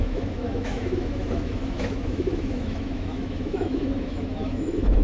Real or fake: fake